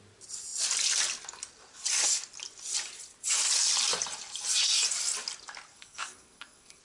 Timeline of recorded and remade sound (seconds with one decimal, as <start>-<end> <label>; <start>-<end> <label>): 0.0-5.7 recorded; 5.7-6.8 remade